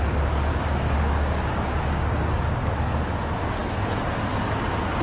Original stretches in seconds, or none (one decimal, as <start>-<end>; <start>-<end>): 0.0-0.5; 2.4-5.0